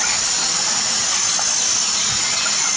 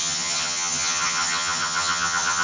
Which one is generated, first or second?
second